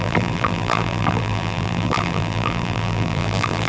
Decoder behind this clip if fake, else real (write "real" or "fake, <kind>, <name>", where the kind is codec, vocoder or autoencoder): fake, vocoder, BigVGAN v2